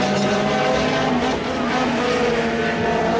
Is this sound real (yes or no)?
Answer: yes